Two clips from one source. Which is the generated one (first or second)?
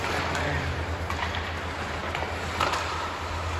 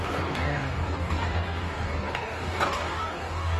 second